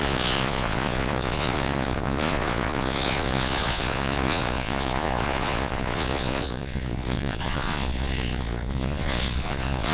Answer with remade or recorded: remade